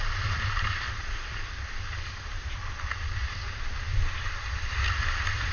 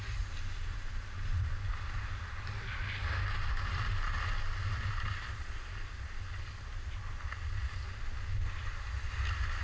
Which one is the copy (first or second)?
first